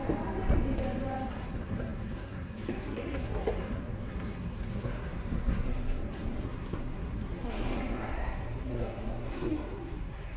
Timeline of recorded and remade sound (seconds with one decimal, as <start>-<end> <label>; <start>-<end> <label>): 0.0-1.3 recorded; 1.3-10.4 remade